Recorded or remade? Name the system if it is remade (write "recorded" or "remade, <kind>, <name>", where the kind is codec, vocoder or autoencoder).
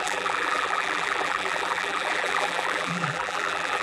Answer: remade, vocoder, BigVGAN v2